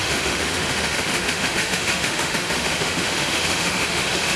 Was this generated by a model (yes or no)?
yes